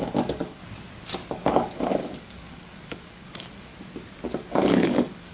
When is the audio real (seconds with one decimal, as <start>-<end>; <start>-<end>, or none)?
0.6-1.3; 3.7-4.5